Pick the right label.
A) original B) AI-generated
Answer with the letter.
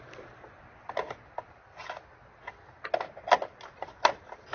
A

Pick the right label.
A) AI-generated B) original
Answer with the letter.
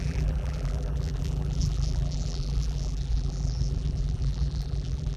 A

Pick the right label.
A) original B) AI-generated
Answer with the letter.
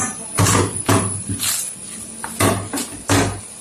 A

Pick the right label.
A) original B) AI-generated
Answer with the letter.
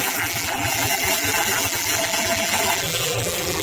B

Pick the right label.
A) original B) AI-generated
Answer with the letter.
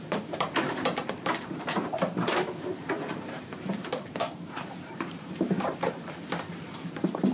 B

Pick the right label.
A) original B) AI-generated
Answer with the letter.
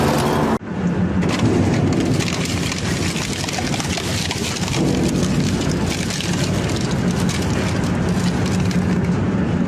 A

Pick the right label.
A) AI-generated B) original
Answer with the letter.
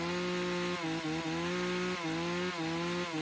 B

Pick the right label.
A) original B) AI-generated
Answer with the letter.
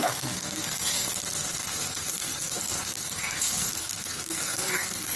B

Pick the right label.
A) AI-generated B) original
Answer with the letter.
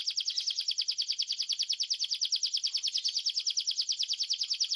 B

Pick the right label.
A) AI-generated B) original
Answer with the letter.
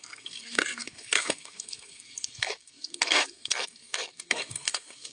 A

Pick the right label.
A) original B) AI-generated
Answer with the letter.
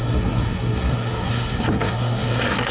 B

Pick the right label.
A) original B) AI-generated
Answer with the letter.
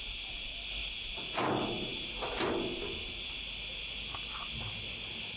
A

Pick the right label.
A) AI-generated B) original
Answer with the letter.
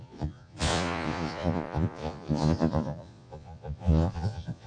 A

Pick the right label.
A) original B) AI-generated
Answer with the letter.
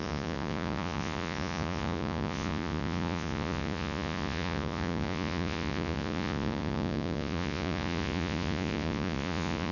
B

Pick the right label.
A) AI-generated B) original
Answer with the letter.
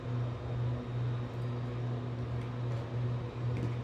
B